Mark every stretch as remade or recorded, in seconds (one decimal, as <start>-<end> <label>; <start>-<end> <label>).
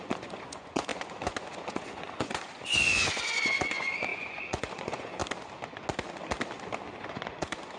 0.0-5.2 remade; 5.2-7.0 recorded; 7.0-7.8 remade